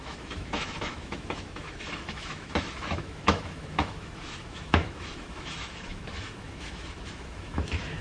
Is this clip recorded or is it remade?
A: remade